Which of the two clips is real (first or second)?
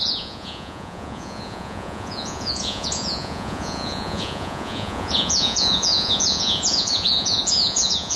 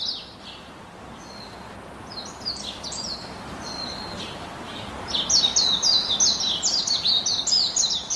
second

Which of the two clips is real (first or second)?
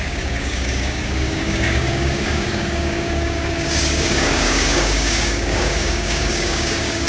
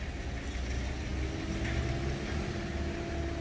second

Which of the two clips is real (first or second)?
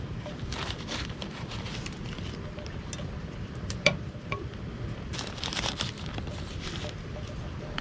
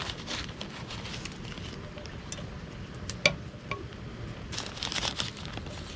second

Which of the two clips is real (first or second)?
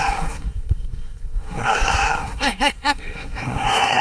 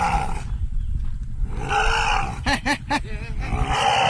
second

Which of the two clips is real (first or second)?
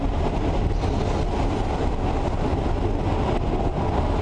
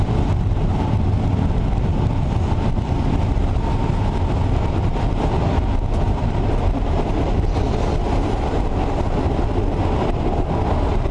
first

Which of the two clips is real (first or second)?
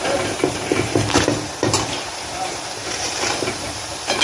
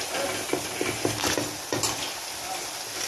second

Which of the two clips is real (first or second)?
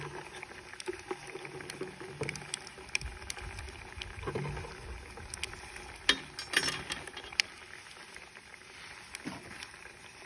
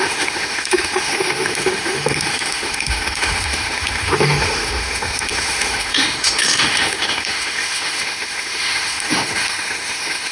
first